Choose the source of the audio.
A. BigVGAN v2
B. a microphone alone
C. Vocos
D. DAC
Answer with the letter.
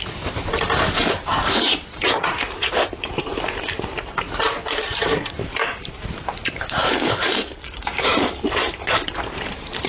A